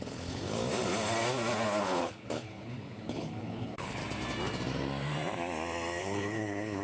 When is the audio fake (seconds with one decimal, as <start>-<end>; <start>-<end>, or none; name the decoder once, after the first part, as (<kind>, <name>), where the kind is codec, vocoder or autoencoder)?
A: 0.0-0.6 (codec, HILCodec); 1.8-4.0; 6.0-6.8